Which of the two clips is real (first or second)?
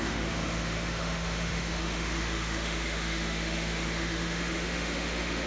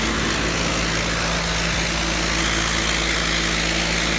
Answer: second